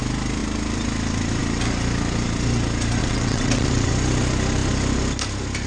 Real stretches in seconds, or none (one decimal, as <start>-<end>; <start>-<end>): 0.0-3.0; 3.9-5.7